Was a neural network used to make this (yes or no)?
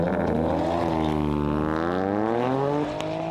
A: no